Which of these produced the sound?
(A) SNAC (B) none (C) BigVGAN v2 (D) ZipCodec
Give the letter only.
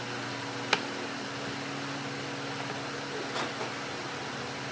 B